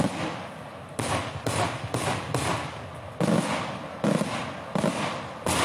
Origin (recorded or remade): recorded